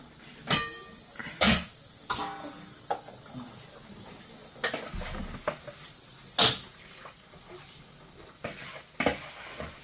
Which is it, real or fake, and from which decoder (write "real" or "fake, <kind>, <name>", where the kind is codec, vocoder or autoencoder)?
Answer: real